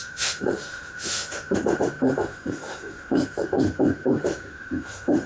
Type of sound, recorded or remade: remade